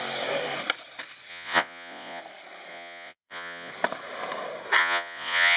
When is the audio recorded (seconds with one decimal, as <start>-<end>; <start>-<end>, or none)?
0.0-1.3; 2.2-2.7; 3.7-4.8